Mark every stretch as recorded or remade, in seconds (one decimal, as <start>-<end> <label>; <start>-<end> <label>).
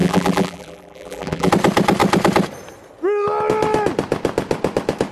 0.0-1.5 remade; 1.5-5.1 recorded